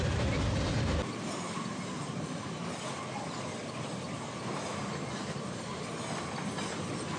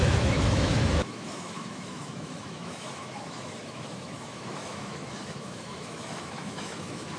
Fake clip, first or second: second